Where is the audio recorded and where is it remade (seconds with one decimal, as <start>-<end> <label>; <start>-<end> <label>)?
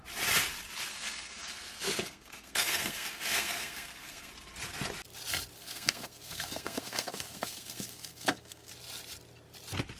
0.0-0.9 recorded; 0.9-4.3 remade; 4.3-5.6 recorded; 5.6-8.7 remade; 8.7-10.0 recorded